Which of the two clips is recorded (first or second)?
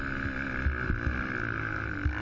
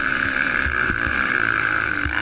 first